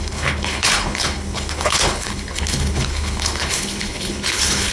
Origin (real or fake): fake